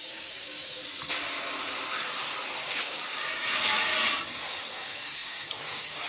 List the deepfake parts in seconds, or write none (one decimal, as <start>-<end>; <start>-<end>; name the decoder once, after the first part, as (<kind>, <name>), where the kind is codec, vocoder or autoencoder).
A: 0.0-0.8 (codec, DAC); 2.6-3.9; 4.7-6.1